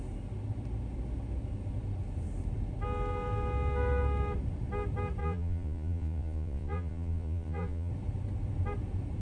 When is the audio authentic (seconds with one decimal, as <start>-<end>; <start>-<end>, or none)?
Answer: 0.0-5.2; 7.9-9.2